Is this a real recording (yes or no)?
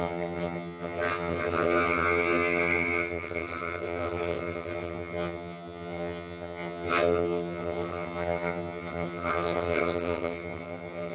no